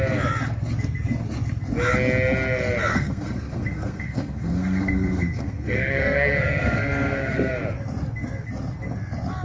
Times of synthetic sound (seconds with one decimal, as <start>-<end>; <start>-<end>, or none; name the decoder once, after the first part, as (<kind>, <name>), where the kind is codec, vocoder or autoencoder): 2.9-7.5 (codec, SNAC)